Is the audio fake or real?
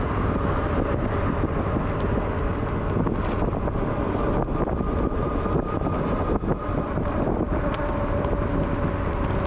real